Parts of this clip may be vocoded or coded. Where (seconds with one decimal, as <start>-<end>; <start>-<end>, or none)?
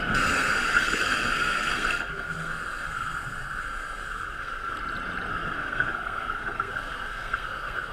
0.0-4.8; 5.3-7.9